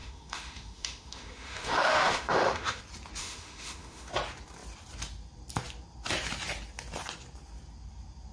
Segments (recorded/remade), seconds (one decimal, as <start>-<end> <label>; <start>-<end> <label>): 0.0-2.8 remade; 2.8-3.2 recorded; 3.2-4.1 remade; 4.1-8.3 recorded